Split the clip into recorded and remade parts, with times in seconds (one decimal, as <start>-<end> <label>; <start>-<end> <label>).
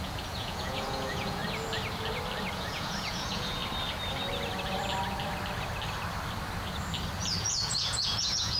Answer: 0.0-1.4 remade; 1.4-2.5 recorded; 2.5-3.6 remade; 3.6-7.4 recorded; 7.4-8.6 remade